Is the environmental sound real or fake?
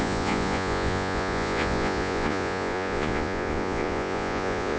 fake